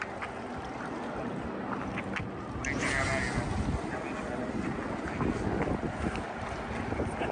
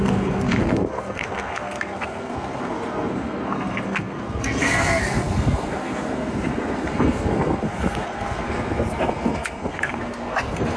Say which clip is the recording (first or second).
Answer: first